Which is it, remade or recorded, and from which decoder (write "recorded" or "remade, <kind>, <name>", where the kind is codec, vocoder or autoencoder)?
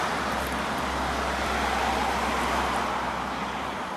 recorded